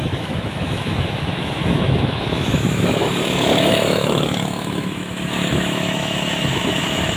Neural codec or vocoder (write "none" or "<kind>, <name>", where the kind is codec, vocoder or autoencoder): autoencoder, DAC-VAE